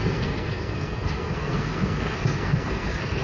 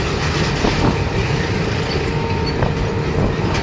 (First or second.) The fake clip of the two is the first